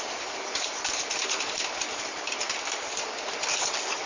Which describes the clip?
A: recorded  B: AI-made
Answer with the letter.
A